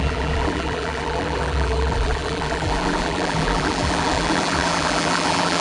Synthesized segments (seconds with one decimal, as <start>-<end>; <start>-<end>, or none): 0.0-5.6